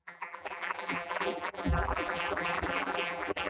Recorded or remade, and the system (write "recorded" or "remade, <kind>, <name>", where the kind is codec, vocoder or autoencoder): remade, vocoder, BigVGAN v2